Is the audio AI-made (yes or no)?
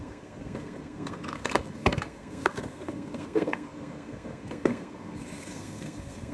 yes